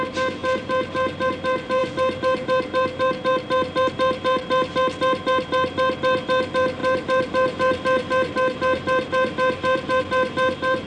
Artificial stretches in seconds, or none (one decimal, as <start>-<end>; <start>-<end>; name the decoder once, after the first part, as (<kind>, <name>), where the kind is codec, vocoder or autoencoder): 0.4-1.3 (vocoder, BigVGAN v2); 6.8-10.0